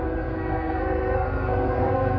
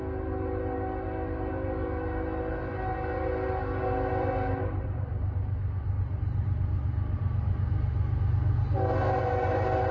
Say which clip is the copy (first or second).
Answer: first